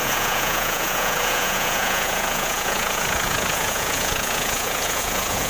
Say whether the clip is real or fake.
fake